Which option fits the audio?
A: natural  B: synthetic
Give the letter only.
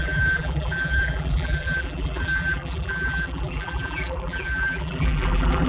B